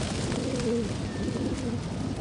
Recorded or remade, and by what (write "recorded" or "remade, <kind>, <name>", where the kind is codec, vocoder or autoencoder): recorded